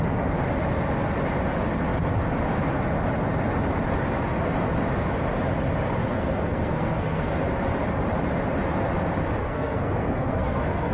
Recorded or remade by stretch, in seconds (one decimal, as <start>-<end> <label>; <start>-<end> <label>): 0.0-6.0 recorded; 6.0-7.4 remade; 7.4-9.4 recorded; 9.4-10.9 remade